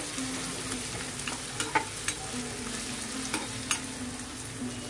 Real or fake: real